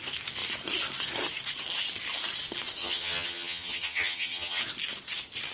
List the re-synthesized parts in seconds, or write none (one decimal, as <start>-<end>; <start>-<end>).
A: 2.8-4.6